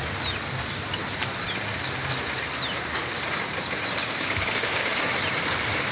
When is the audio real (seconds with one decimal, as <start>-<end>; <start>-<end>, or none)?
0.0-4.0; 5.0-5.9